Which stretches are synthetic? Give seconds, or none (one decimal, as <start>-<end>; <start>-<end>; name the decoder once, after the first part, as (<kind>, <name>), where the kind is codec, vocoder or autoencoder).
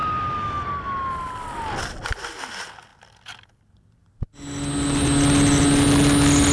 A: none